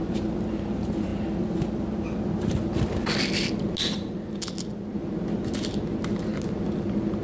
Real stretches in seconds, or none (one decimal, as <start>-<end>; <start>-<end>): 0.0-7.2